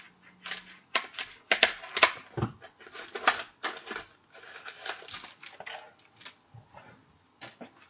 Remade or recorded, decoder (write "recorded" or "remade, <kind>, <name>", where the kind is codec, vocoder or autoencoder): recorded